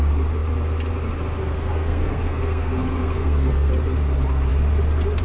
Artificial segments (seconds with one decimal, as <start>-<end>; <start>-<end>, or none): 1.5-3.7

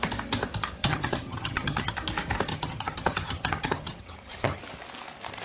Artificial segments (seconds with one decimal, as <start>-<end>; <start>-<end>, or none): 0.8-1.9; 2.5-4.6

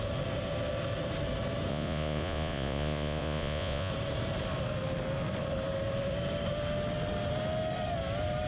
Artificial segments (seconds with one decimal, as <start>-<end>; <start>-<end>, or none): 1.7-3.9